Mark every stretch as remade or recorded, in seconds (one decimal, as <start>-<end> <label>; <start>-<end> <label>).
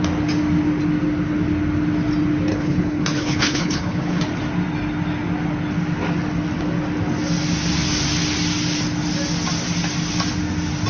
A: 0.0-2.5 recorded; 2.5-4.2 remade; 4.2-10.9 recorded